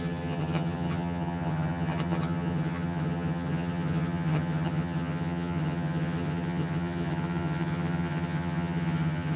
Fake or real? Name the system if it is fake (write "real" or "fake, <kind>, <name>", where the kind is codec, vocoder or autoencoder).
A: fake, vocoder, HiFi-GAN